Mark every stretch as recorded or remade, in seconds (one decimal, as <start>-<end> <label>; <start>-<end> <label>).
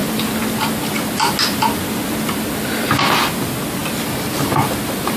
0.0-3.8 recorded; 3.8-5.2 remade